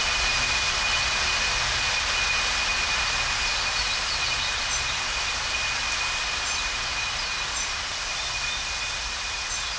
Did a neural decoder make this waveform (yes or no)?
no